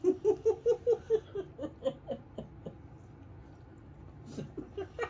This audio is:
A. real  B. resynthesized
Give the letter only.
A